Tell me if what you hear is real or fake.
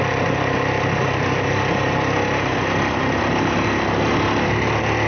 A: real